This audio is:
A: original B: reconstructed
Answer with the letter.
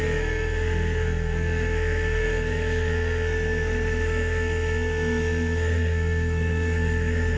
B